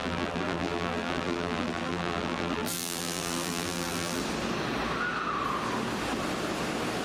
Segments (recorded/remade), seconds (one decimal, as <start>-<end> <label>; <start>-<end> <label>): 0.0-4.2 remade; 4.2-7.0 recorded

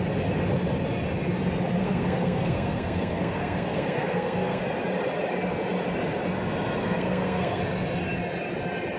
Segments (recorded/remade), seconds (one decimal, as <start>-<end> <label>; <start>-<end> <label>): 0.0-1.8 recorded; 1.8-4.6 remade; 4.6-6.8 recorded; 6.8-7.6 remade; 7.6-9.0 recorded